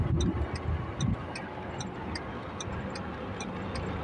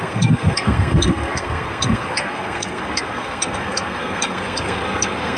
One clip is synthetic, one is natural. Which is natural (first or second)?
first